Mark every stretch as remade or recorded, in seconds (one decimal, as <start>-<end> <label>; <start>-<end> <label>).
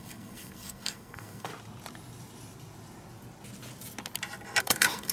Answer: 0.0-1.5 remade; 1.5-4.6 recorded; 4.6-5.1 remade